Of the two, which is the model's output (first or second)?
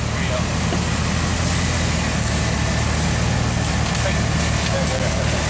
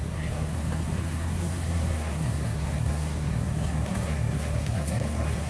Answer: second